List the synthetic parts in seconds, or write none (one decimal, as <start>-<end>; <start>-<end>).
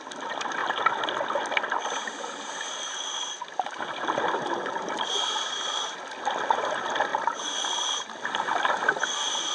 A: none